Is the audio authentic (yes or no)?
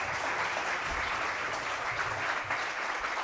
no